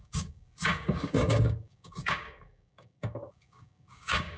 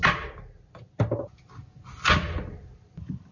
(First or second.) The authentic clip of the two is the second